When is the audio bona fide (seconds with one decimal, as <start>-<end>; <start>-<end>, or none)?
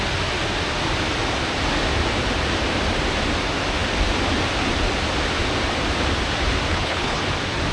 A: 0.0-6.7; 7.2-7.7